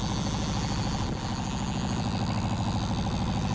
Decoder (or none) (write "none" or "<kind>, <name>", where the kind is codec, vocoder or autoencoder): none